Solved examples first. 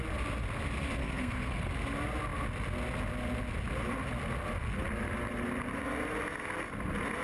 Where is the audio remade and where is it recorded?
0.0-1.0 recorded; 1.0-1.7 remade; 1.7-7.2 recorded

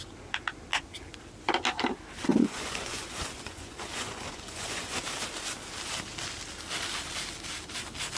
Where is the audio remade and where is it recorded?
0.0-2.3 recorded; 2.3-5.0 remade; 5.0-8.2 recorded

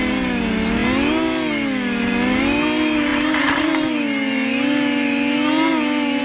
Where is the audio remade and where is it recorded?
0.0-6.2 recorded

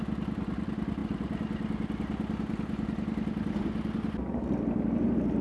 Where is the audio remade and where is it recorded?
0.0-5.4 recorded

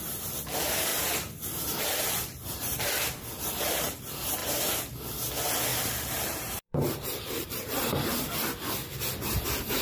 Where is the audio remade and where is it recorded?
0.0-0.9 recorded; 0.9-4.0 remade; 4.0-4.4 recorded; 4.4-5.3 remade; 5.3-5.7 recorded; 5.7-8.3 remade; 8.3-9.8 recorded

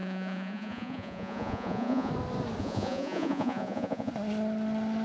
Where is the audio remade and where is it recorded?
0.0-2.1 remade; 2.1-2.6 recorded; 2.6-4.1 remade; 4.1-5.0 recorded

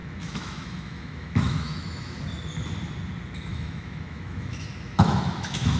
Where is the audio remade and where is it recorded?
0.0-2.2 remade; 2.2-3.5 recorded; 3.5-5.8 remade